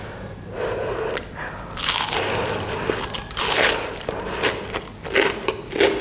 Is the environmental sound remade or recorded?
recorded